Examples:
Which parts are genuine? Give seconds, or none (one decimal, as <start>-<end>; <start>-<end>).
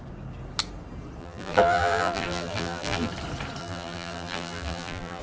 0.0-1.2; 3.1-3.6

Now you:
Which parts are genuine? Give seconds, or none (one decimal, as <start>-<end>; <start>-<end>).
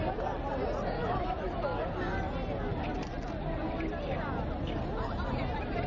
0.0-1.0; 1.8-5.9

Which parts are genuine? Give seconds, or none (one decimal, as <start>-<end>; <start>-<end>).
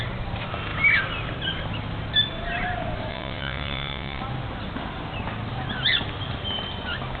0.0-3.1; 4.2-7.2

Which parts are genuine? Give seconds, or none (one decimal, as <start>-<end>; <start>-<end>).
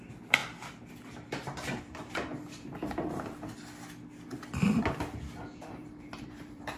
0.4-1.8; 2.3-5.4